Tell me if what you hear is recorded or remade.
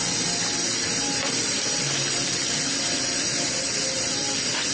recorded